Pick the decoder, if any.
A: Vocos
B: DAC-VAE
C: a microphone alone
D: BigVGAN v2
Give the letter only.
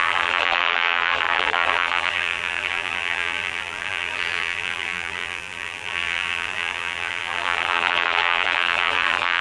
D